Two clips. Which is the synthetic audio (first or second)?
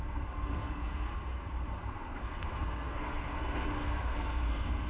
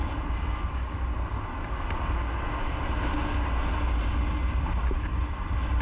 first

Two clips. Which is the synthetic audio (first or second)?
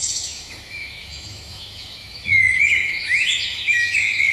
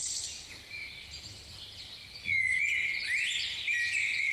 first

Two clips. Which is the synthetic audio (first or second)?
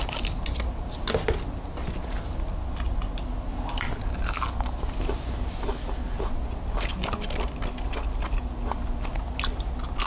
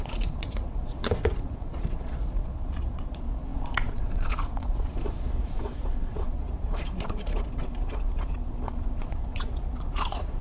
second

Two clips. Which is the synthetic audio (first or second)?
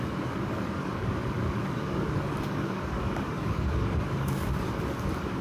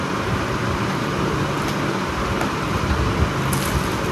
first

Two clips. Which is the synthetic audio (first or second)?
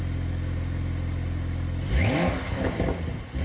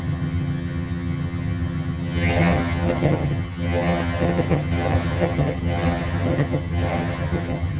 second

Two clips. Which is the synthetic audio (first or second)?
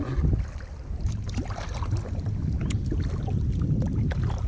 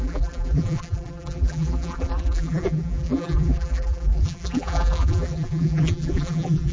second